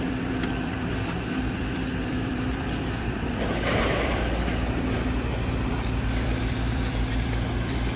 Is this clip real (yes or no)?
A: no